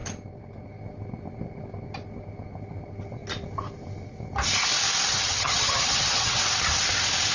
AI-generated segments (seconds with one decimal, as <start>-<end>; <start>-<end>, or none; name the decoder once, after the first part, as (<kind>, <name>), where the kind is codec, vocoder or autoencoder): 5.1-6.4 (vocoder, HiFi-GAN)